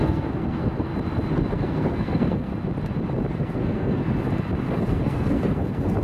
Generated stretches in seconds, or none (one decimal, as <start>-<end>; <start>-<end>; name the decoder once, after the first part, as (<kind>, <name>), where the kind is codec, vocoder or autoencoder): 0.0-0.9 (codec, SNAC); 1.5-2.5; 3.3-4.0; 4.9-6.0